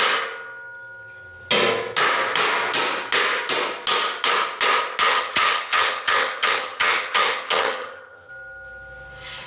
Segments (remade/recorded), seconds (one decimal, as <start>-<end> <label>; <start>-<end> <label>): 0.0-5.0 recorded; 5.0-8.3 remade; 8.3-9.5 recorded